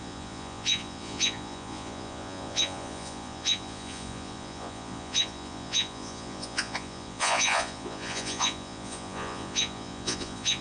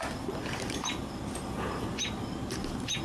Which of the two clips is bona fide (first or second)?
second